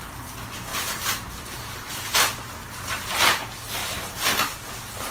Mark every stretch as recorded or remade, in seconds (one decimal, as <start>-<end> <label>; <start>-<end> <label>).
0.0-0.7 recorded; 0.7-3.4 remade; 3.4-5.1 recorded